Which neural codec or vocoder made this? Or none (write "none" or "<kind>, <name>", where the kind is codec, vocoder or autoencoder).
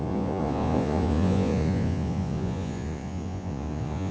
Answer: vocoder, Vocos